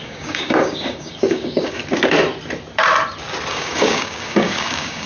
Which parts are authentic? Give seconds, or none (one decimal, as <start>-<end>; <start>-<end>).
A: 1.8-3.5